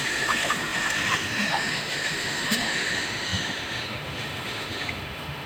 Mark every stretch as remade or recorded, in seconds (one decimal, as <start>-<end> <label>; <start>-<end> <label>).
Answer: 0.0-5.5 remade